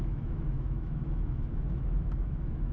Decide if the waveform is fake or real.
fake